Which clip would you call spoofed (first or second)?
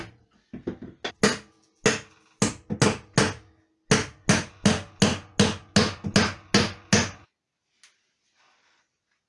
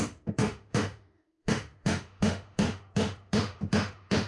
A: second